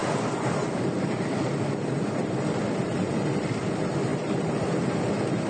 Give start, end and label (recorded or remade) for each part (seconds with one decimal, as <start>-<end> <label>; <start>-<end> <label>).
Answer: 0.0-1.8 remade; 1.8-4.1 recorded; 4.1-5.0 remade; 5.0-5.5 recorded